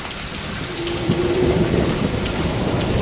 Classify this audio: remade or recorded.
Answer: remade